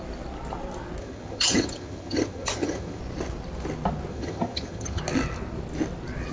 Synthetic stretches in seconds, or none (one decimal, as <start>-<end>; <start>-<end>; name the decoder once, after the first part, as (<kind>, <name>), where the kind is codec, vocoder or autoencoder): 1.0-3.0 (vocoder, HiFi-GAN); 4.1-5.0